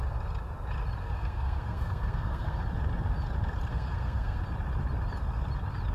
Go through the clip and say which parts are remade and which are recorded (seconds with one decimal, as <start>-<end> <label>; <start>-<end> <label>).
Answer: 0.0-1.0 recorded; 1.0-2.6 remade; 2.6-3.7 recorded; 3.7-4.4 remade; 4.4-5.9 recorded